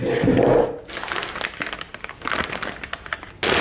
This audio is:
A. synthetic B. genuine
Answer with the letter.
B